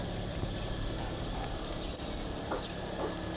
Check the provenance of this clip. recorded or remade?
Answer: remade